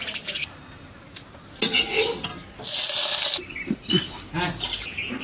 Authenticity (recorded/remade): recorded